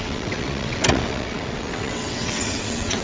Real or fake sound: fake